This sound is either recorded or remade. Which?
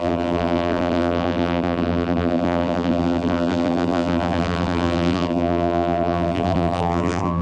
remade